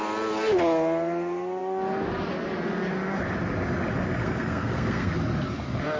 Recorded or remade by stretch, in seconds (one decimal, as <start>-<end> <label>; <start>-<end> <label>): 0.0-4.2 recorded; 4.2-5.1 remade; 5.1-6.0 recorded